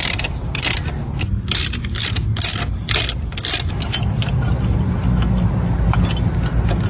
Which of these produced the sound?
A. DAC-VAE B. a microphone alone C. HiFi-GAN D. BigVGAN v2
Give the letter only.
B